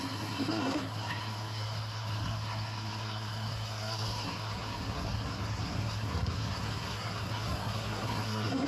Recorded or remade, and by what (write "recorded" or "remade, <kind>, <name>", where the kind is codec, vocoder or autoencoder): remade, codec, SNAC